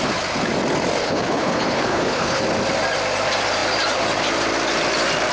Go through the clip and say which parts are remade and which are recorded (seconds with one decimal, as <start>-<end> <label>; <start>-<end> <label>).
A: 0.0-1.0 recorded; 1.0-2.4 remade; 2.4-5.3 recorded